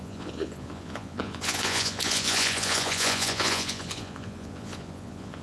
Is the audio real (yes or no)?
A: no